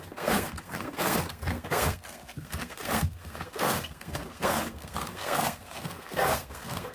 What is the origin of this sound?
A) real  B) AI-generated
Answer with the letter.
B